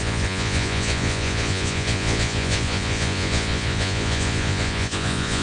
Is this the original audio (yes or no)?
no